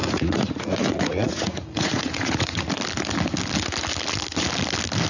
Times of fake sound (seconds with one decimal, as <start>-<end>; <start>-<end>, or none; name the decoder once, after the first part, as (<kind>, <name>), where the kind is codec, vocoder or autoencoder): 0.0-2.7 (vocoder, Vocos)